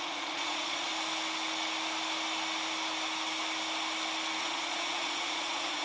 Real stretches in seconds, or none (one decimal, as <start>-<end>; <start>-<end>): 0.9-4.4